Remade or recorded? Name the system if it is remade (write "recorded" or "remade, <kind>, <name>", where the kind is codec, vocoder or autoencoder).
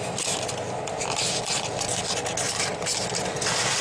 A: recorded